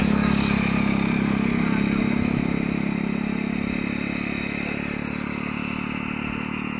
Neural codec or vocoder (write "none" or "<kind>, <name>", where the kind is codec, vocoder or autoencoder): none